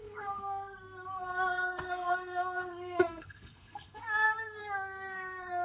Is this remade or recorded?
remade